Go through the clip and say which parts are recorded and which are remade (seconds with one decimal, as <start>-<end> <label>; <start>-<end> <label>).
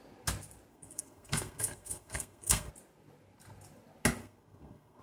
0.0-0.7 recorded; 0.7-2.7 remade; 2.7-4.2 recorded; 4.2-5.0 remade